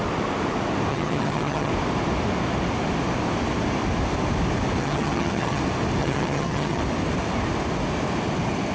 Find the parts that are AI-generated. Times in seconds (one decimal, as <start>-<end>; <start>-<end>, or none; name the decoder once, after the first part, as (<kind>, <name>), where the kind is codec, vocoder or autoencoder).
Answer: 0.9-1.7 (vocoder, HiFi-GAN); 4.8-5.6; 6.0-6.8